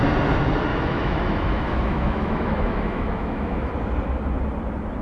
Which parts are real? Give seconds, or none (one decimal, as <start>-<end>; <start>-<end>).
0.0-0.7; 3.7-5.0